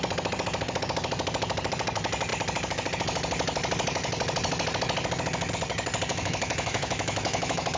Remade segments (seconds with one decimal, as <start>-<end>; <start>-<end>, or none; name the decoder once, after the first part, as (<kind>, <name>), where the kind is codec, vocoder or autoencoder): 6.1-7.8 (autoencoder, DAC-VAE)